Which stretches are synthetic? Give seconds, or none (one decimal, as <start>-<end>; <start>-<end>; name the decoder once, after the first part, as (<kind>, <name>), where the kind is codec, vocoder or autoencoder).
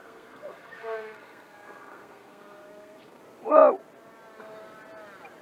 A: 0.0-3.2 (codec, SNAC)